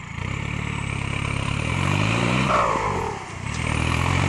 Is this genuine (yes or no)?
no